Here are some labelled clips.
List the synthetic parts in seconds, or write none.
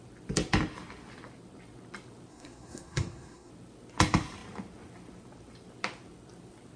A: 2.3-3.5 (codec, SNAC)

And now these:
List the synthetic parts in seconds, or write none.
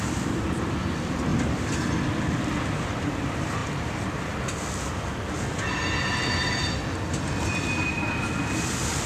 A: none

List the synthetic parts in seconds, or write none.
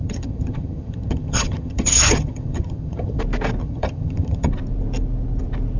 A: 0.0-3.2 (vocoder, HiFi-GAN); 3.6-4.5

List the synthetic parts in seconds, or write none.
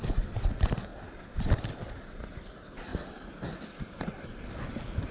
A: 0.0-0.9 (vocoder, BigVGAN v2); 2.0-2.9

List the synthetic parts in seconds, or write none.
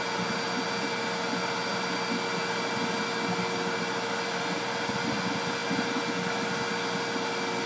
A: none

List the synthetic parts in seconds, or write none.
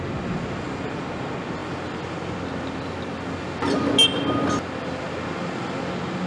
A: none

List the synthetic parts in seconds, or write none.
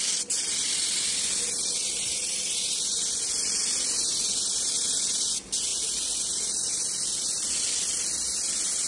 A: none